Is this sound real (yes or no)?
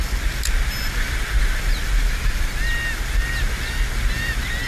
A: yes